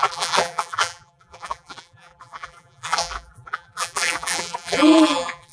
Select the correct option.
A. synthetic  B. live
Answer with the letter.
A